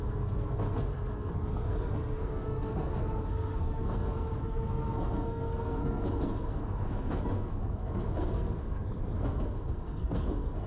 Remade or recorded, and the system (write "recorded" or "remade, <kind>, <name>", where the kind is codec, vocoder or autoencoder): remade, codec, SNAC